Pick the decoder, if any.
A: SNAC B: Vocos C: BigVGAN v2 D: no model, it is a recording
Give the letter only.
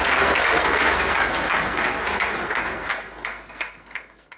A